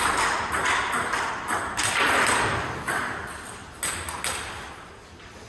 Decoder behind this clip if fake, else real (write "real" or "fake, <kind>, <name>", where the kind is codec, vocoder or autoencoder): real